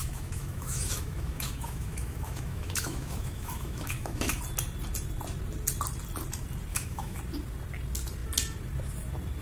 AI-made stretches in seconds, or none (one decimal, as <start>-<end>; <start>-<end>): 0.0-4.4; 6.7-7.2